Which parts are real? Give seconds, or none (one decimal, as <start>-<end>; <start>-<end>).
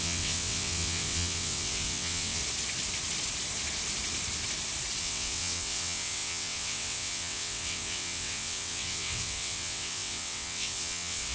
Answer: 2.4-5.0